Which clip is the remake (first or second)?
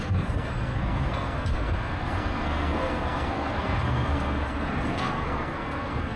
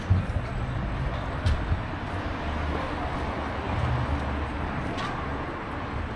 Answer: first